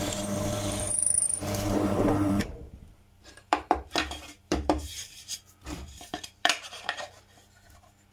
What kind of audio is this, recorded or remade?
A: remade